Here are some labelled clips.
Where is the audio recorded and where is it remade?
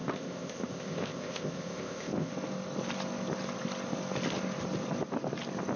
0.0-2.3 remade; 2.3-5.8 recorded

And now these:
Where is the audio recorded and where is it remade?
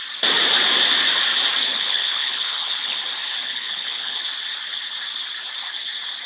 0.0-1.7 recorded; 1.7-3.0 remade; 3.0-3.4 recorded; 3.4-4.2 remade; 4.2-6.3 recorded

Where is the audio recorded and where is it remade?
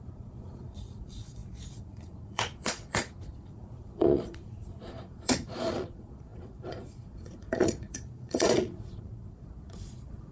0.0-10.3 remade